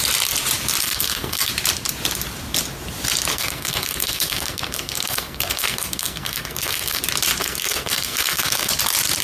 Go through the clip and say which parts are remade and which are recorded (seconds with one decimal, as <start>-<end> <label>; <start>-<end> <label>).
0.0-0.8 recorded; 0.8-1.5 remade; 1.5-3.3 recorded; 3.3-7.0 remade; 7.0-7.4 recorded; 7.4-8.7 remade; 8.7-9.2 recorded